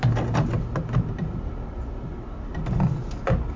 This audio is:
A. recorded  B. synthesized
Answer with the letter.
A